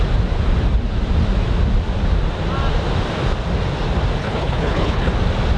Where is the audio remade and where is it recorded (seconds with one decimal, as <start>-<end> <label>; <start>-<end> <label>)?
0.0-4.2 recorded; 4.2-5.1 remade; 5.1-5.6 recorded

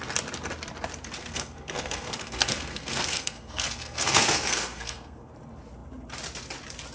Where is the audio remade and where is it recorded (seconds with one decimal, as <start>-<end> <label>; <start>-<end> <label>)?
0.0-1.2 recorded; 1.2-5.3 remade; 5.3-6.9 recorded

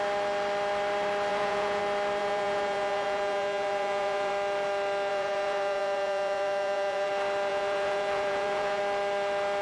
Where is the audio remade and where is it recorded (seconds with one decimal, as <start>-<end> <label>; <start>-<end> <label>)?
0.0-1.3 recorded; 1.3-1.8 remade; 1.8-2.2 recorded; 2.2-4.3 remade; 4.3-5.1 recorded; 5.1-7.1 remade; 7.1-7.5 recorded; 7.5-8.8 remade; 8.8-9.6 recorded

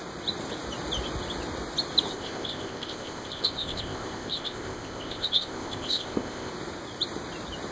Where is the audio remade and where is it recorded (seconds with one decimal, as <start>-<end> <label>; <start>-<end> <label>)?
0.0-2.1 recorded; 2.1-6.5 remade; 6.5-7.7 recorded

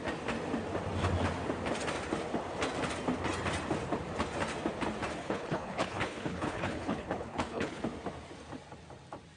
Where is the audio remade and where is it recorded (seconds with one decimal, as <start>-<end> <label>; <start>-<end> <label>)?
0.0-5.2 recorded; 5.2-7.8 remade; 7.8-9.4 recorded